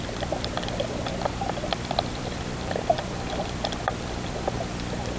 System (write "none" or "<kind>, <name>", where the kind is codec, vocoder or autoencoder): vocoder, BigVGAN v2